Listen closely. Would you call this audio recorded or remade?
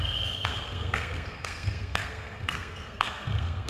remade